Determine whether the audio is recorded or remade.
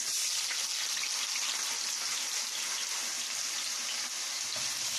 recorded